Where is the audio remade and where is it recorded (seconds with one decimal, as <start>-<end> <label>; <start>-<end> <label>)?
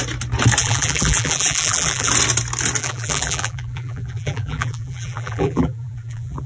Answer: 0.0-0.6 recorded; 0.6-2.1 remade; 2.1-2.8 recorded; 2.8-6.5 remade